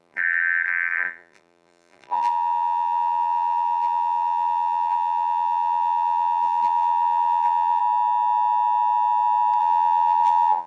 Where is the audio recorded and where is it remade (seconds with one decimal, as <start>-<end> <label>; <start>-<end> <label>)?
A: 0.0-7.8 remade; 7.8-9.6 recorded; 9.6-10.7 remade